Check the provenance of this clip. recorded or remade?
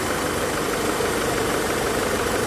remade